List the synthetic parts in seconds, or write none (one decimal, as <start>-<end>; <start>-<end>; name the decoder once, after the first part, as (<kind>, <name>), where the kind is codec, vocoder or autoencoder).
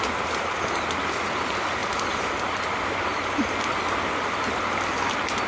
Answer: none